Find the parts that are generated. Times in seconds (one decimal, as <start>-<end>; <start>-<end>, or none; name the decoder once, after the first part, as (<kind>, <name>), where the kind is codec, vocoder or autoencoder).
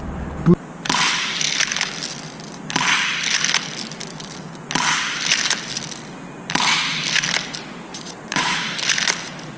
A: 7.9-8.6 (vocoder, Vocos)